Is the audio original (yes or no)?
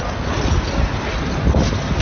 yes